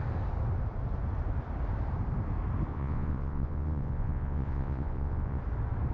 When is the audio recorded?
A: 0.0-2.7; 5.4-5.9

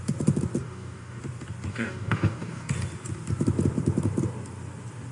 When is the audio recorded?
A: 0.0-0.6; 1.2-1.7; 2.7-5.1